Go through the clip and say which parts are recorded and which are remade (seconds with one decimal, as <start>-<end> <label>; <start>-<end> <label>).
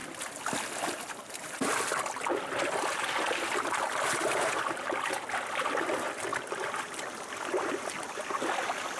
0.0-9.0 recorded